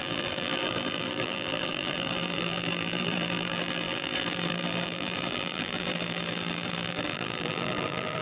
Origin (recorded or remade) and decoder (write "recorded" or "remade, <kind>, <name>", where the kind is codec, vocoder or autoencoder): remade, vocoder, BigVGAN v2